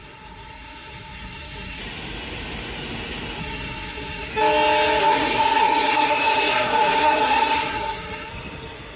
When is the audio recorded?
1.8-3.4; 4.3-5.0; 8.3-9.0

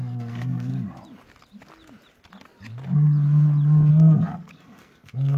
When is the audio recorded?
0.7-3.9

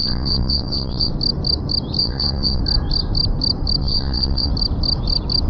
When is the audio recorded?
1.1-2.0; 2.6-3.8; 4.5-5.5

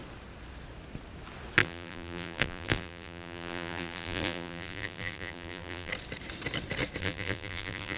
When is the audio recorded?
0.0-1.6; 5.9-7.0

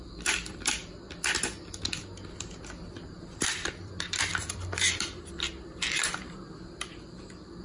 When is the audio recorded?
0.8-3.2

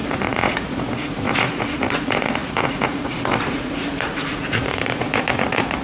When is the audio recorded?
none